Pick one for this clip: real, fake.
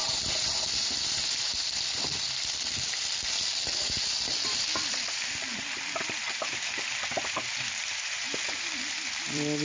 fake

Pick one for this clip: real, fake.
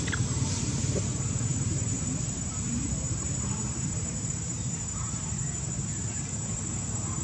fake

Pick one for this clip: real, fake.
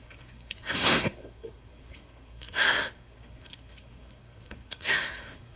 fake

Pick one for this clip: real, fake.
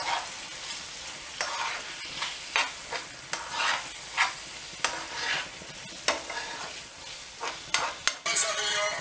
real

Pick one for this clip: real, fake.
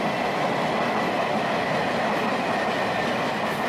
real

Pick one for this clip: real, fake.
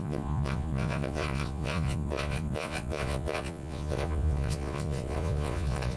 fake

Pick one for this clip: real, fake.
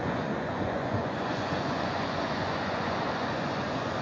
fake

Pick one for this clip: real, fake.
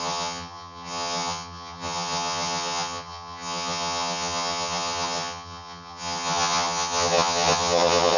fake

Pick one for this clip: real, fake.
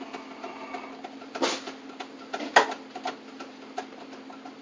real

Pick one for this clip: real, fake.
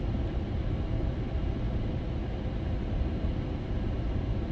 real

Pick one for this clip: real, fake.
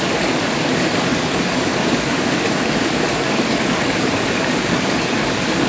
fake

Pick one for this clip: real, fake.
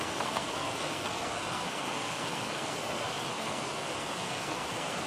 fake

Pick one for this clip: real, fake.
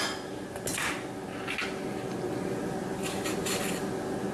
real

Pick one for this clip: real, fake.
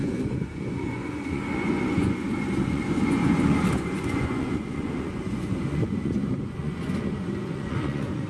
fake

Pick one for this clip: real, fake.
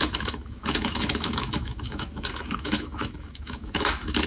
fake